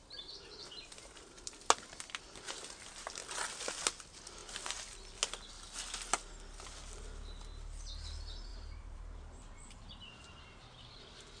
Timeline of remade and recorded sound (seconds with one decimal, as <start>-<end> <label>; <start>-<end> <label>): 0.0-1.3 remade; 1.3-8.5 recorded; 8.5-11.0 remade; 11.0-11.4 recorded